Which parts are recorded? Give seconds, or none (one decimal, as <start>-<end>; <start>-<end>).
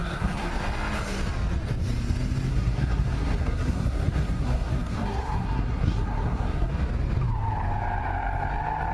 0.5-2.5; 6.7-8.9